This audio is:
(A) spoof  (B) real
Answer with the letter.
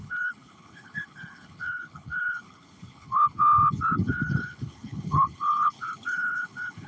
A